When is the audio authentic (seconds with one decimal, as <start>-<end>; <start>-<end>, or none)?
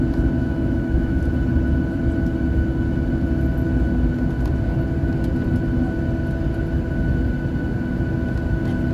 0.0-0.4; 1.2-8.9